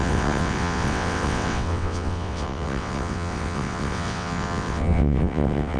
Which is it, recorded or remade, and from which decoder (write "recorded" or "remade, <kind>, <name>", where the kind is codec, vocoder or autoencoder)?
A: remade, vocoder, WaveNeXt